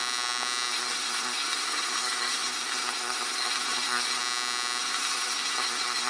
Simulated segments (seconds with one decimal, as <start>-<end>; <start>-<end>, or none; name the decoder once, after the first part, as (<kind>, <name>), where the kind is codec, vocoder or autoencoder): 0.7-4.2 (codec, SNAC); 4.8-6.1